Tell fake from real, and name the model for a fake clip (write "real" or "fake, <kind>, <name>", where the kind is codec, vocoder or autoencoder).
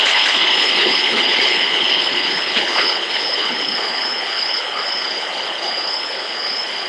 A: fake, codec, HILCodec